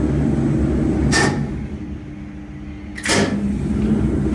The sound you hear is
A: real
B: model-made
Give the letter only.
A